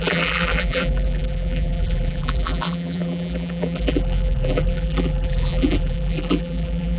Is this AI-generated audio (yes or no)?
yes